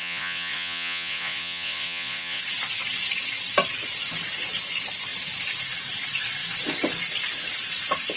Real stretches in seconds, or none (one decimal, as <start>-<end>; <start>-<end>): 2.4-8.2